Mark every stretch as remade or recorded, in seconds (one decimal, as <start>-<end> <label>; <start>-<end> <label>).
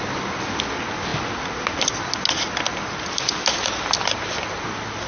0.0-5.1 recorded